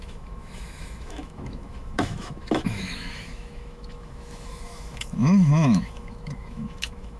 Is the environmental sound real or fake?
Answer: fake